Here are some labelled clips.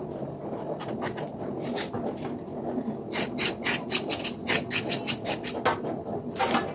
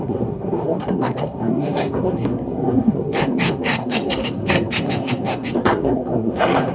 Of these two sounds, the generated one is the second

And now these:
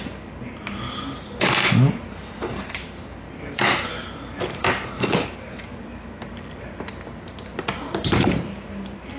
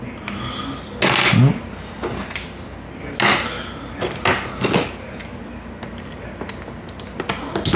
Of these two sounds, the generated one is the first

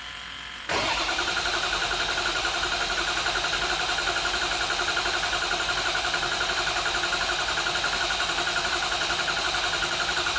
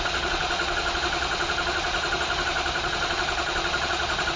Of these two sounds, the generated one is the second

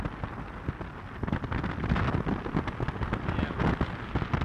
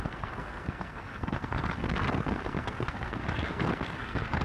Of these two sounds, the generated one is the second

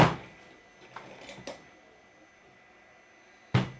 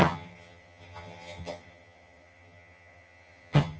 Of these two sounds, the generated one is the second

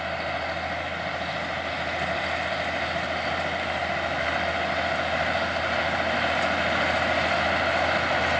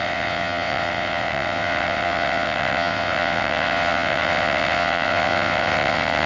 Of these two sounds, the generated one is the second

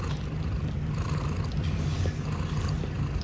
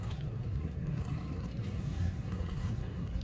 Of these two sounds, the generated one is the second